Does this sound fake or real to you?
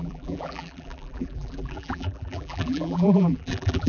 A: fake